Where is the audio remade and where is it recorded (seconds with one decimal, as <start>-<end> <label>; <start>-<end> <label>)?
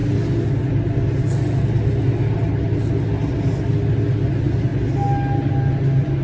0.0-6.2 recorded